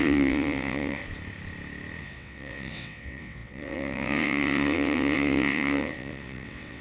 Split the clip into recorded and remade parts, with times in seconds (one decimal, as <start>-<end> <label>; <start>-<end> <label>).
0.0-1.0 remade; 1.0-2.0 recorded; 2.0-6.8 remade